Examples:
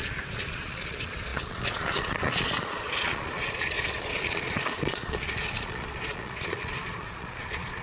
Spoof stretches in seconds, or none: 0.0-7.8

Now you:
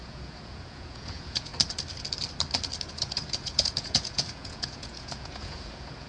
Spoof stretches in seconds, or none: 0.0-1.5; 2.9-6.1

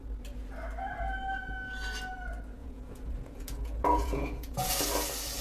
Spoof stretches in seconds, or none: 2.6-4.7

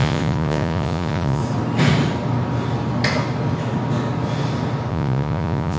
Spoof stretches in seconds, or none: 0.0-1.4; 4.9-5.8

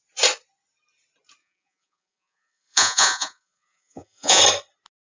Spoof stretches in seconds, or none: 1.4-4.4

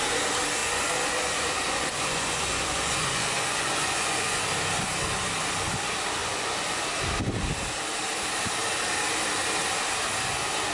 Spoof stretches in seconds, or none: 0.6-4.4; 6.2-6.8

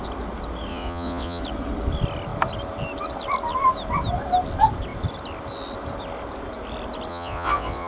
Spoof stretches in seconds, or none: 0.7-1.4; 7.1-7.9